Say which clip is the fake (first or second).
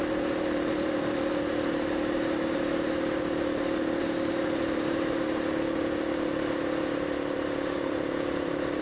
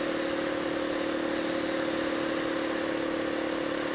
first